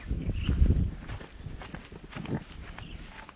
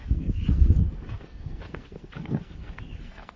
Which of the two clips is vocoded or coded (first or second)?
second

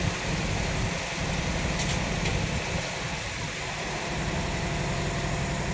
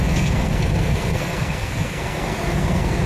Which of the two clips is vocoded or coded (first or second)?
second